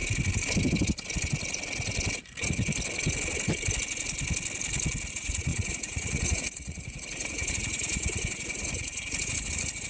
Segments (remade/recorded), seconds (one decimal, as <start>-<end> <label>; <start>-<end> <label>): 0.0-5.1 recorded; 5.1-9.9 remade